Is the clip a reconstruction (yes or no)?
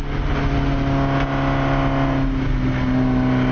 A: no